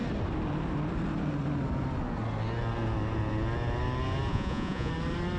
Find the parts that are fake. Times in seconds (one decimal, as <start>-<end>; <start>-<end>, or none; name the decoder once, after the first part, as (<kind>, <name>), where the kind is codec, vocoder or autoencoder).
4.3-4.9 (vocoder, Vocos)